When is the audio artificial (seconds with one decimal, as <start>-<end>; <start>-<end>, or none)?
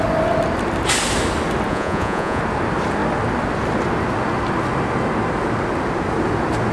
1.7-2.4